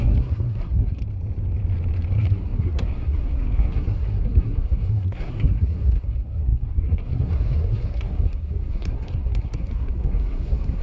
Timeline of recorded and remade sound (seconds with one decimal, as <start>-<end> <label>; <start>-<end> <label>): 0.0-1.0 remade; 1.0-2.1 recorded; 2.1-10.8 remade

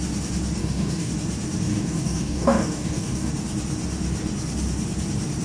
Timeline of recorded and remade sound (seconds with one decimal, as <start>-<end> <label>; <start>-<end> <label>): 0.0-0.6 recorded; 0.6-1.1 remade; 1.1-1.7 recorded; 1.7-3.3 remade; 3.3-5.4 recorded

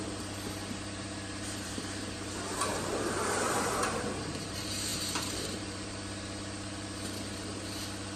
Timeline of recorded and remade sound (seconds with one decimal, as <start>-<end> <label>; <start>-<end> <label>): 0.0-8.2 remade

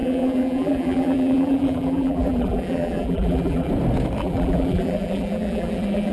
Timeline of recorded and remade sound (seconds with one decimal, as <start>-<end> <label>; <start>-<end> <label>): 0.0-3.7 remade; 3.7-4.2 recorded; 4.2-6.1 remade

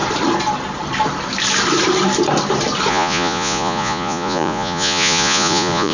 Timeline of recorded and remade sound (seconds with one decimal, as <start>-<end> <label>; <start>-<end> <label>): 0.0-2.9 recorded; 2.9-5.9 remade

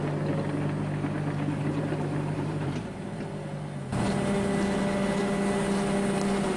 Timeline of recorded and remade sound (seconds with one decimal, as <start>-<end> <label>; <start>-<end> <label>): 0.0-1.6 recorded; 1.6-3.2 remade; 3.2-6.6 recorded

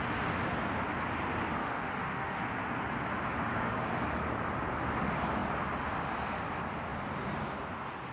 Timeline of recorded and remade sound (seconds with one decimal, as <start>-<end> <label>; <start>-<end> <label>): 0.0-1.6 recorded; 1.6-2.4 remade; 2.4-8.1 recorded